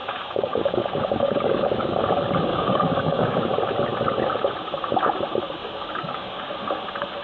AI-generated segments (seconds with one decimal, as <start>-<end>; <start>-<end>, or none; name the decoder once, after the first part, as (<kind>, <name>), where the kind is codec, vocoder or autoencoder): 0.0-2.0 (codec, DAC); 2.5-3.4; 5.6-6.5